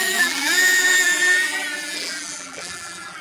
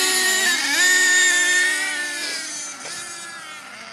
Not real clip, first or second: first